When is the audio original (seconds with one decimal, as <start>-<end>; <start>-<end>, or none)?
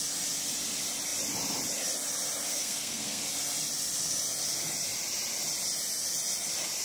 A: 0.0-2.5; 3.2-6.8